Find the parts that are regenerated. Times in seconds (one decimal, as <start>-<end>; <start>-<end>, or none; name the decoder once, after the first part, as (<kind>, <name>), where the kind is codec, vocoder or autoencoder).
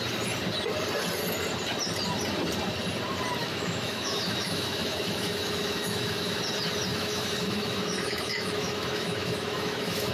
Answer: 3.4-6.4 (autoencoder, DAC-VAE); 6.9-10.1